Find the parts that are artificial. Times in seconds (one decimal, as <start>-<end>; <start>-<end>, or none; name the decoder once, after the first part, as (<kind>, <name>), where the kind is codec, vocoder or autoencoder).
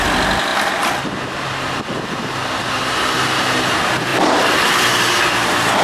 4.1-4.9 (vocoder, BigVGAN v2)